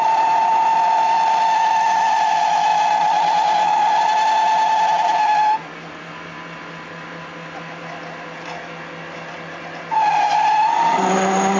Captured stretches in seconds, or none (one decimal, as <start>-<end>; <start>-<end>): 0.0-11.6